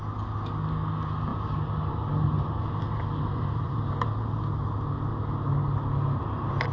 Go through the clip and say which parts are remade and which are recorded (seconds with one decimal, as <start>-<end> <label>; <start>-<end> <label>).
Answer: 0.0-1.3 recorded; 1.3-4.4 remade; 4.4-6.7 recorded